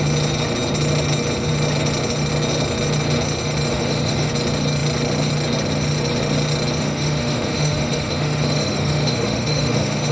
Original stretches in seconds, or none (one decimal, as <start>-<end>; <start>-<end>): 0.0-3.7; 4.3-6.8